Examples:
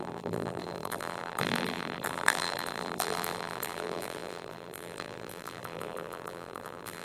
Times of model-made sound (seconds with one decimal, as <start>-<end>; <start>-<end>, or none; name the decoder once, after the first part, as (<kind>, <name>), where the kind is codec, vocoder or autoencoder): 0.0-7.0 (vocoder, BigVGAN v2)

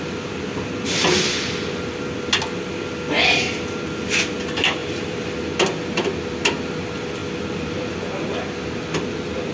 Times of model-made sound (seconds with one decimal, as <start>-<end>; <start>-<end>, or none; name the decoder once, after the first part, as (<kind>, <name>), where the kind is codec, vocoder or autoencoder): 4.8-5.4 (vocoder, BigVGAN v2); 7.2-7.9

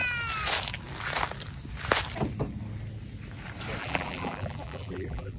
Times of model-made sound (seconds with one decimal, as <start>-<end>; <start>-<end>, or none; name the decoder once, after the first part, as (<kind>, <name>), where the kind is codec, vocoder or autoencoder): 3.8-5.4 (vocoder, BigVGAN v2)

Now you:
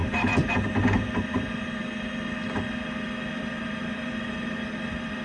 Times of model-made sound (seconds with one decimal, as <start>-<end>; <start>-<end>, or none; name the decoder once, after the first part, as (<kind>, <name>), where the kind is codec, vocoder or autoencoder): 0.0-1.8 (vocoder, BigVGAN v2); 3.4-5.2